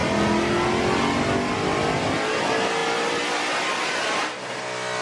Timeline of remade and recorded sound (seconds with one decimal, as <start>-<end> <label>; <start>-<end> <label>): 0.0-5.0 recorded